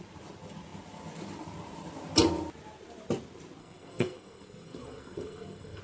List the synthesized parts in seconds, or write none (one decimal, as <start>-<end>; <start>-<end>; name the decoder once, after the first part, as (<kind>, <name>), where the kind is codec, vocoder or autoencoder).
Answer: 3.6-5.8 (codec, SNAC)